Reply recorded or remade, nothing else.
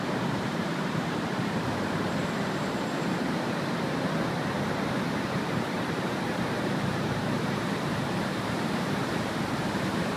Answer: remade